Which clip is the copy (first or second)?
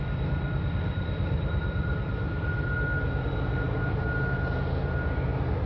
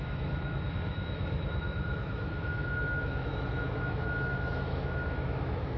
second